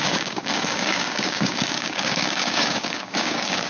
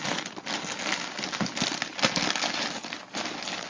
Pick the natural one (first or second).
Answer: second